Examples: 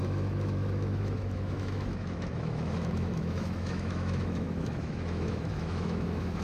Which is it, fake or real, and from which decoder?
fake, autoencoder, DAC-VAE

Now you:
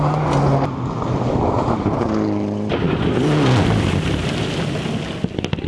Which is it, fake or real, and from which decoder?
real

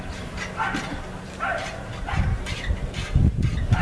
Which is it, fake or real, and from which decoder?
real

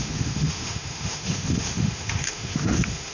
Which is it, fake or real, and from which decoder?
fake, autoencoder, DAC-VAE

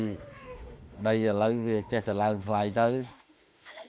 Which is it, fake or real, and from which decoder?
fake, autoencoder, DAC-VAE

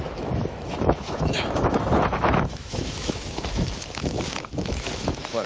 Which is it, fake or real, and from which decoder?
fake, autoencoder, DAC-VAE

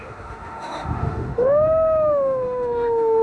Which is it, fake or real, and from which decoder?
fake, autoencoder, DAC-VAE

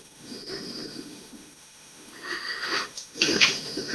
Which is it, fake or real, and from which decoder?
fake, autoencoder, DAC-VAE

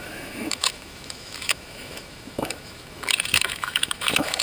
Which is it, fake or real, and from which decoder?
fake, autoencoder, DAC-VAE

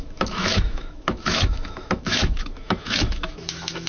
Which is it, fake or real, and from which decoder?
fake, autoencoder, DAC-VAE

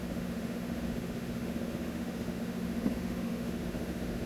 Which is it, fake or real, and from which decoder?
fake, autoencoder, DAC-VAE